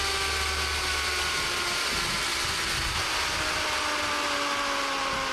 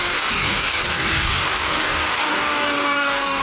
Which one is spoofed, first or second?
second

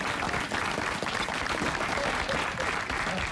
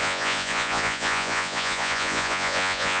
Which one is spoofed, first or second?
second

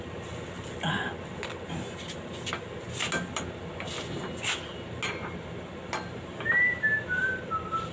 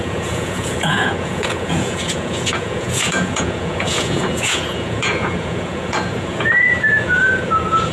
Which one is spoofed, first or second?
second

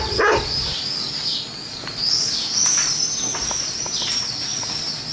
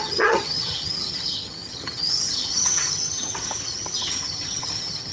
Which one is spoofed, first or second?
second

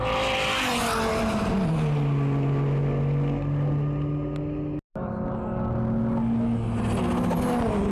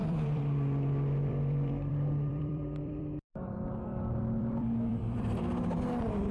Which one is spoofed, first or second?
second